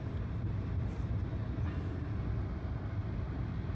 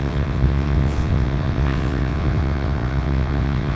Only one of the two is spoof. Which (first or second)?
second